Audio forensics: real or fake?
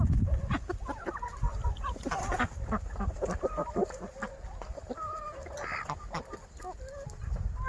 real